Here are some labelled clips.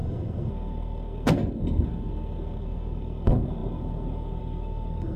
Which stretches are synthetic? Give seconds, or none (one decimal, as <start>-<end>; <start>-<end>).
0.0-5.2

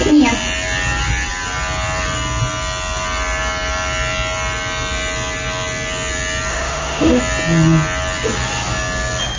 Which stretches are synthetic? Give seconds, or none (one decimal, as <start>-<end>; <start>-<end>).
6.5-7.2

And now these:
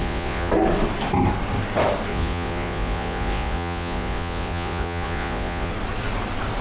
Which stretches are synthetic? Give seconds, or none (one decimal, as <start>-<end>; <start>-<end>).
0.0-0.5; 2.1-5.7